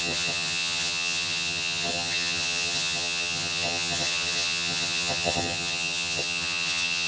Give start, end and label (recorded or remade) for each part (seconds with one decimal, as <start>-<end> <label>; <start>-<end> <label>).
0.0-7.1 remade